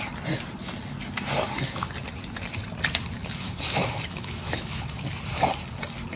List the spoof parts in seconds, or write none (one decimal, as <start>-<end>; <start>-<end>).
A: 3.2-5.0